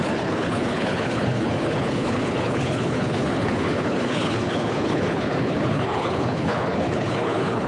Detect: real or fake fake